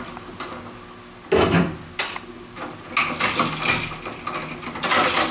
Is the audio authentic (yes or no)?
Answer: yes